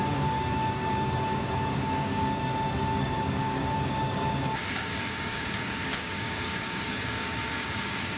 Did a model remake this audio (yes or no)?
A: yes